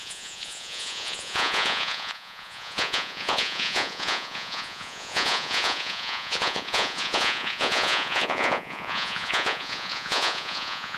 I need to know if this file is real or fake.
fake